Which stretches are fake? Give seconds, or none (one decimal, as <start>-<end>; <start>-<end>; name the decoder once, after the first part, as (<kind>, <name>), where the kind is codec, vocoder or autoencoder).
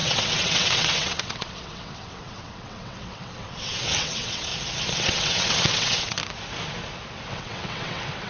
0.0-4.5 (vocoder, WaveNeXt); 5.0-6.2; 7.3-8.3